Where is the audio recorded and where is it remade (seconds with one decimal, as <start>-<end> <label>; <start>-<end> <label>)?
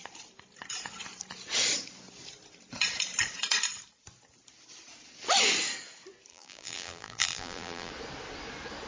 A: 0.0-6.3 recorded; 6.3-7.9 remade; 7.9-8.9 recorded